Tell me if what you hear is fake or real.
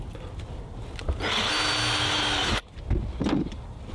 real